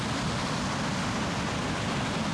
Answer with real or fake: real